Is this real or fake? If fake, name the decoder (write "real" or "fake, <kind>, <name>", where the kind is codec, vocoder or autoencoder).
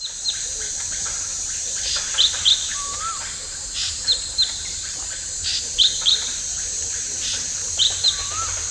fake, vocoder, BigVGAN v2